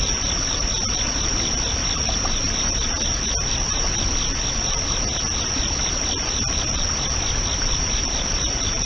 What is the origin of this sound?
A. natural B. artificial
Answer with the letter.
A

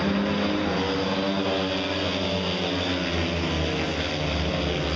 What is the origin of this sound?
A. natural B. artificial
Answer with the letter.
A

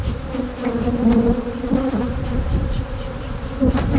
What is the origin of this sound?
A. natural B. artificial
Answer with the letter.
B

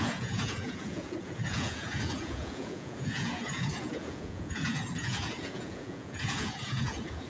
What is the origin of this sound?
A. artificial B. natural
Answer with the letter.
A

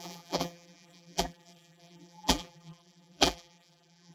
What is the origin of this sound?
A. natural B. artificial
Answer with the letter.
B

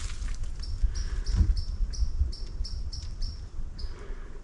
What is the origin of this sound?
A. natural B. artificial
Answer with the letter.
A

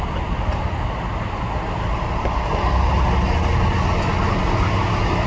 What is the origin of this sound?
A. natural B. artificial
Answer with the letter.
A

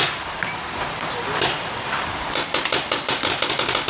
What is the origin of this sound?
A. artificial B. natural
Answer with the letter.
B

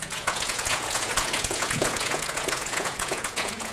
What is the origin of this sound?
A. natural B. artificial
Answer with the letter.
B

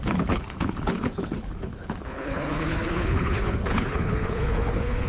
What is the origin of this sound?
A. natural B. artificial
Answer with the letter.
B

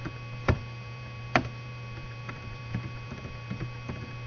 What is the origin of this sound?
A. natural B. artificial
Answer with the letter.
B